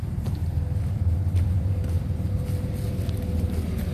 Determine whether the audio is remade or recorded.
recorded